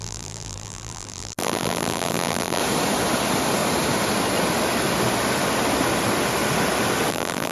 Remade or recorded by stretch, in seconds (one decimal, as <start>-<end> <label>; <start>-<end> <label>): 0.0-2.6 remade; 2.6-7.1 recorded; 7.1-7.5 remade